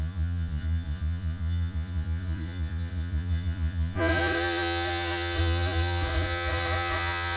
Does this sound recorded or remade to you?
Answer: remade